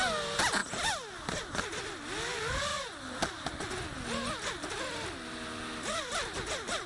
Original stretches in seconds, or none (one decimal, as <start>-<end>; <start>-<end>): 0.0-6.9